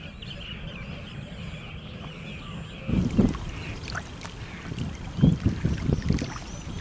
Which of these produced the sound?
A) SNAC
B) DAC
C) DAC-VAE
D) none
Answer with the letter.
D